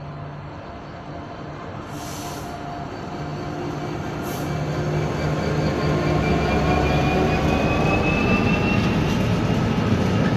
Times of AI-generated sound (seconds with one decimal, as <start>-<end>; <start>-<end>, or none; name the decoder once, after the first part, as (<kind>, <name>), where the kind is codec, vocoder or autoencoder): none